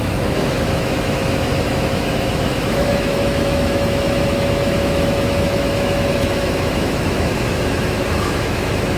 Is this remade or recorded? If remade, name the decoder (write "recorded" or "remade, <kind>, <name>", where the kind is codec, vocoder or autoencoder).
remade, autoencoder, DAC-VAE